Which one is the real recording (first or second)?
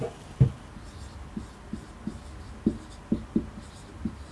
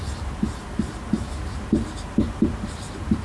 first